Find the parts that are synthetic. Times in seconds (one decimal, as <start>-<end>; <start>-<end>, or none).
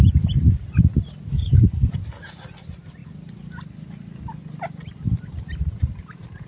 1.3-1.9